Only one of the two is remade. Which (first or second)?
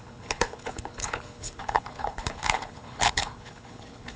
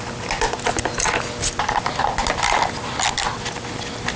first